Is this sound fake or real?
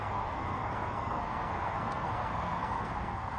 fake